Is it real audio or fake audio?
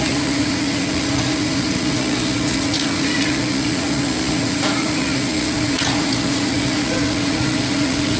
fake